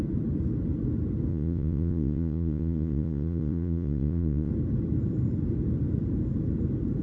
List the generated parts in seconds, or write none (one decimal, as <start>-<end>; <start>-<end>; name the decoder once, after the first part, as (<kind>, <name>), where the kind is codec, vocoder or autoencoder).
1.3-4.5 (vocoder, Vocos)